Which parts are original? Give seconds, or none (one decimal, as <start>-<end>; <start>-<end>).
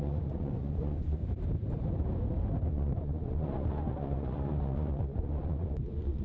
1.2-2.7